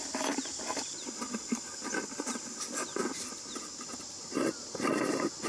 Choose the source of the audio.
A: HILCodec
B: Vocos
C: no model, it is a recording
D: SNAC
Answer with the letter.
C